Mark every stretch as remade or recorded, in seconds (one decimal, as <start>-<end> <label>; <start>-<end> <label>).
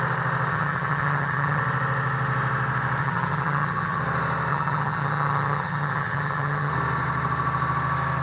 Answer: 0.0-0.5 recorded; 0.5-1.6 remade; 1.6-3.0 recorded; 3.0-4.0 remade; 4.0-4.5 recorded; 4.5-6.7 remade; 6.7-8.2 recorded